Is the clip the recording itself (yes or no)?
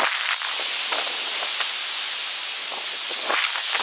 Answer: yes